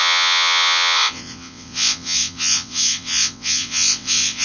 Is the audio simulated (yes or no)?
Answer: yes